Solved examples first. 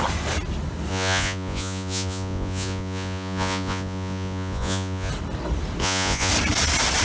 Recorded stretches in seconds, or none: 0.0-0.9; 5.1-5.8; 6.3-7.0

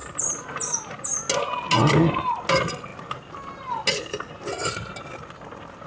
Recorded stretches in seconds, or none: 1.0-5.9

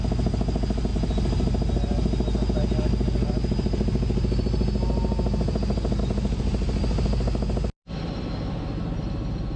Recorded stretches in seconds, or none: 0.0-9.6

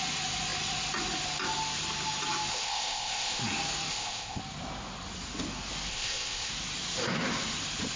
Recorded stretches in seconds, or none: 0.0-2.5; 3.4-3.9; 4.4-5.9; 6.5-8.0